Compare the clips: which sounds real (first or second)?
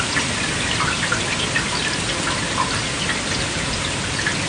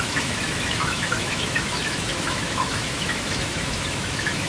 first